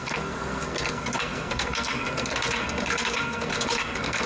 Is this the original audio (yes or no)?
no